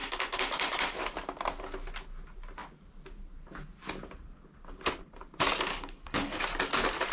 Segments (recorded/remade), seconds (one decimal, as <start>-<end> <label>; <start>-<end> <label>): 0.0-5.7 recorded; 5.7-6.4 remade; 6.4-7.1 recorded